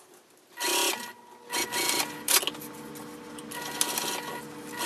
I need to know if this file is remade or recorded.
recorded